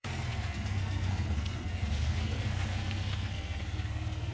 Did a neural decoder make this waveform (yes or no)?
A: yes